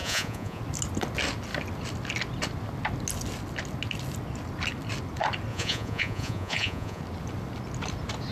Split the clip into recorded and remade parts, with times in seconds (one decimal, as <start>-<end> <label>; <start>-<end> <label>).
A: 0.0-0.6 remade; 0.6-5.5 recorded; 5.5-7.0 remade; 7.0-8.3 recorded

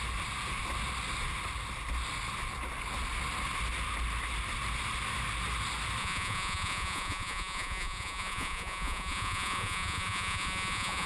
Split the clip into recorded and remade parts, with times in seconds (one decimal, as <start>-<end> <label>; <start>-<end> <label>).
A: 0.0-6.0 recorded; 6.0-11.1 remade

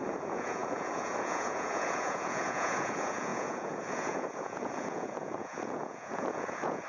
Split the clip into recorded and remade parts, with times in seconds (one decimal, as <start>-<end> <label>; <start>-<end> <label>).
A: 0.0-6.9 remade

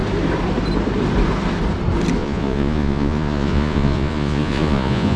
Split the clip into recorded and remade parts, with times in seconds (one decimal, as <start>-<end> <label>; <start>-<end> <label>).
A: 0.0-2.2 recorded; 2.2-5.2 remade

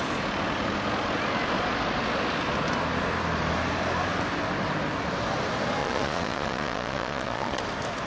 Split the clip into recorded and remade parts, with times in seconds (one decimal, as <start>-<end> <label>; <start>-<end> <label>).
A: 0.0-5.8 recorded; 5.8-7.6 remade; 7.6-8.1 recorded

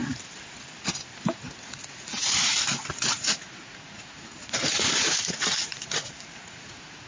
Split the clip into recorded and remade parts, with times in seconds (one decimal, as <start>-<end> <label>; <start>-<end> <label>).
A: 0.0-1.6 recorded; 1.6-2.1 remade; 2.1-2.9 recorded; 2.9-7.1 remade

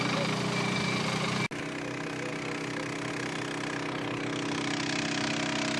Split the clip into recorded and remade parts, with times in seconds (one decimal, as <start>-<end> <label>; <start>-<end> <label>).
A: 0.0-5.8 recorded

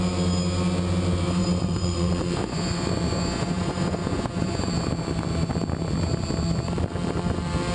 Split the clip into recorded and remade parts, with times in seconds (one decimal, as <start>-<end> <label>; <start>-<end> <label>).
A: 0.0-1.4 recorded; 1.4-4.7 remade; 4.7-7.7 recorded